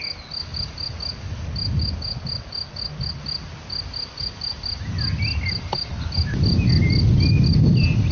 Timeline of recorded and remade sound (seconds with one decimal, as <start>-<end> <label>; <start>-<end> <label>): 0.0-8.1 recorded